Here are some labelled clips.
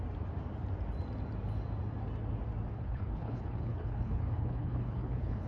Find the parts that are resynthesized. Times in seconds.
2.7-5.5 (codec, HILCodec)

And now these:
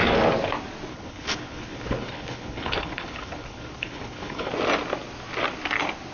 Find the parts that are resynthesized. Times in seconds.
0.9-4.5 (codec, HILCodec)

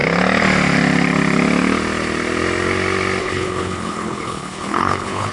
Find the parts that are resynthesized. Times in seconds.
3.2-5.3 (codec, HILCodec)

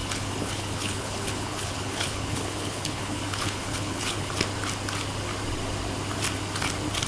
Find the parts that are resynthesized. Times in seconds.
0.0-4.3 (codec, HILCodec)

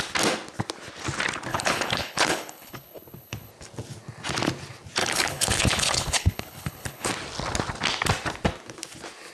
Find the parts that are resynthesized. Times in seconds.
1.5-3.5 (codec, HILCodec); 5.0-7.1